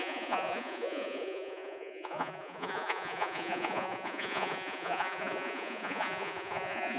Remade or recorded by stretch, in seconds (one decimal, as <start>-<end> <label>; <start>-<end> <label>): 0.0-7.0 remade